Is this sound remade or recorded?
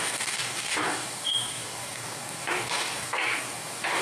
remade